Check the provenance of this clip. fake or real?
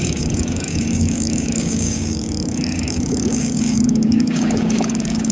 fake